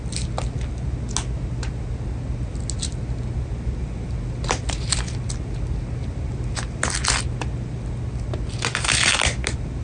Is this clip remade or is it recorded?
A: recorded